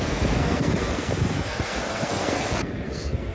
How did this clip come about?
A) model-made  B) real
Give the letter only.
A